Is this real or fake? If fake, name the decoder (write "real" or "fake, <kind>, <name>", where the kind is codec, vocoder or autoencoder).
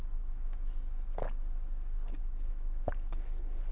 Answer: real